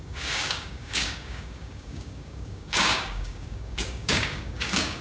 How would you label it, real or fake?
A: fake